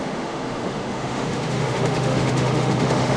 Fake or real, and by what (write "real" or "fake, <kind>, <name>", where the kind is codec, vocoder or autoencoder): fake, autoencoder, DAC-VAE